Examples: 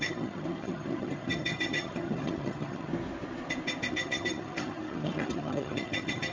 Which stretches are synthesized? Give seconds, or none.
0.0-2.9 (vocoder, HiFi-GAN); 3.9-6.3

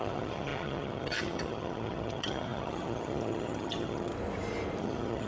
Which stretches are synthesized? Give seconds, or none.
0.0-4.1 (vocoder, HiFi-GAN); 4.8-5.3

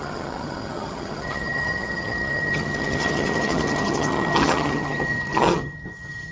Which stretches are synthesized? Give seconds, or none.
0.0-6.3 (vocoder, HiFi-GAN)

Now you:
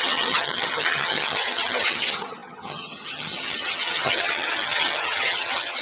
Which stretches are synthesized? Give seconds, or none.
0.0-5.8 (vocoder, HiFi-GAN)

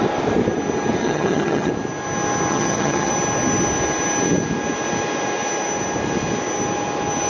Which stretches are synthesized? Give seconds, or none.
1.0-1.7 (vocoder, HiFi-GAN); 2.5-3.1